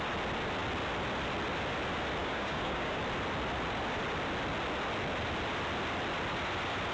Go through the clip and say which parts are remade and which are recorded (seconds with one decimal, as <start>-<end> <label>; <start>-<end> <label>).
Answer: 0.0-2.2 recorded; 2.2-3.0 remade; 3.0-6.9 recorded